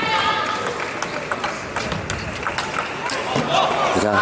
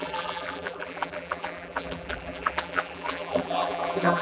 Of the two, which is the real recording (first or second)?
first